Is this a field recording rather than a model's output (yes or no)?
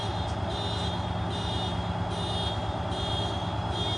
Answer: yes